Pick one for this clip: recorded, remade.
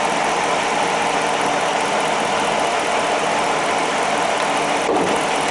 recorded